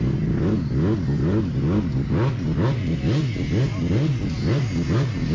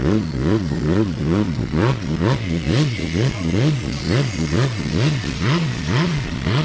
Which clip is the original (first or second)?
first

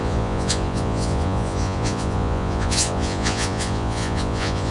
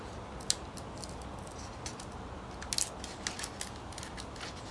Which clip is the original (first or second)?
second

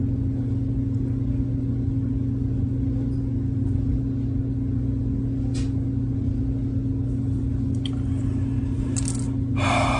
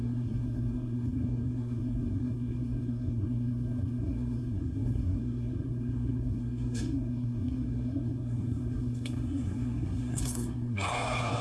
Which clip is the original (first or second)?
first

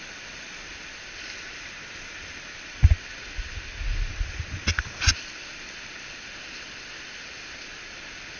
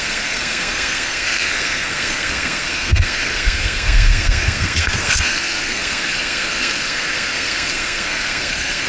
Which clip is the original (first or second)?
first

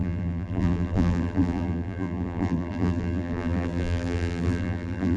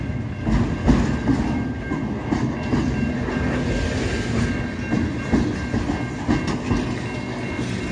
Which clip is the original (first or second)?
second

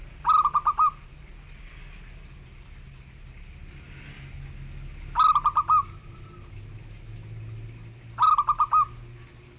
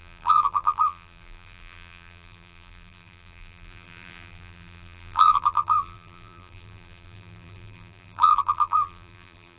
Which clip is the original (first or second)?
first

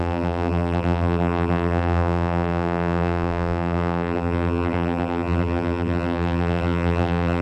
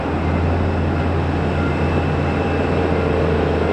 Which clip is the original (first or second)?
second